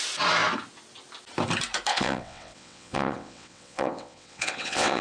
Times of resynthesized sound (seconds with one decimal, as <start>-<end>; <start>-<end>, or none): 1.9-5.0

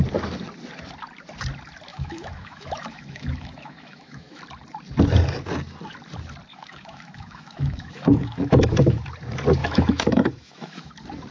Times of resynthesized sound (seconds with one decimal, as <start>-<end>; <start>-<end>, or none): 1.9-4.4; 6.5-9.0; 9.6-10.9

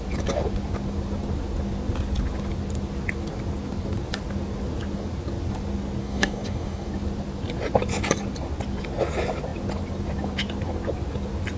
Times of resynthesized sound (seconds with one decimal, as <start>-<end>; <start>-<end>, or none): 6.0-6.9

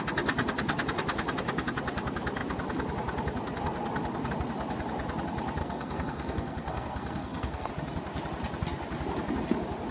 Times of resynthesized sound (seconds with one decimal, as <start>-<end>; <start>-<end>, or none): 5.6-7.7

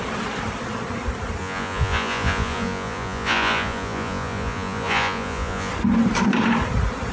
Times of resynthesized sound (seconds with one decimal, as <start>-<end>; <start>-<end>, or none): 1.4-5.7

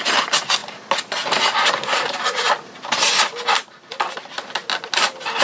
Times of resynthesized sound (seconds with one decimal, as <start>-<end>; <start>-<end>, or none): none